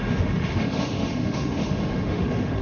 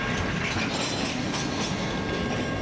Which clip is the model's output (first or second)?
first